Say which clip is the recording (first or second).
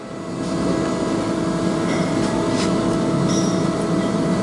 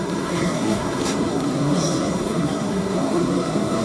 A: first